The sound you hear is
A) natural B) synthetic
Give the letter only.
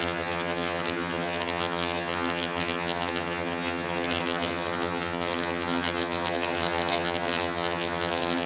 B